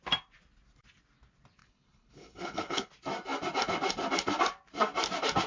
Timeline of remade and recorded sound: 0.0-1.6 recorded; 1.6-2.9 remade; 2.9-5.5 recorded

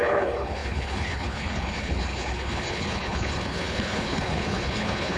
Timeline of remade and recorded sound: 0.0-5.2 remade

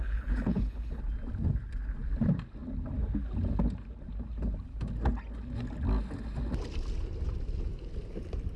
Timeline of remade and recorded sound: 0.0-1.0 remade; 1.0-8.6 recorded

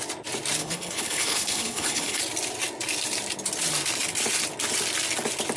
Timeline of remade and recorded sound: 0.0-0.6 recorded; 0.6-2.2 remade; 2.2-5.6 recorded

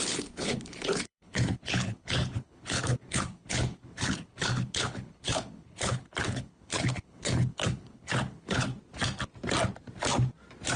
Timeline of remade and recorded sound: 0.0-8.7 remade; 8.7-10.8 recorded

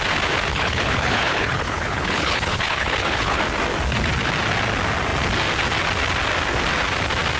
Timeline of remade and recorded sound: 0.0-0.5 recorded; 0.5-3.4 remade; 3.4-7.4 recorded

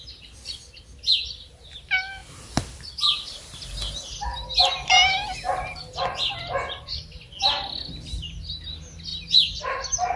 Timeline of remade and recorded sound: 0.0-10.2 recorded